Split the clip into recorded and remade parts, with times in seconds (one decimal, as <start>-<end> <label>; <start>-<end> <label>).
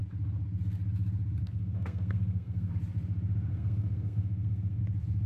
0.0-1.4 recorded; 1.4-2.7 remade; 2.7-3.5 recorded; 3.5-4.8 remade; 4.8-5.3 recorded